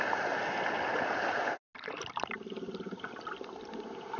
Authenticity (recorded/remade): recorded